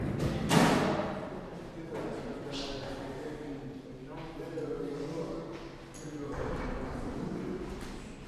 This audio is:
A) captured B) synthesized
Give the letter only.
A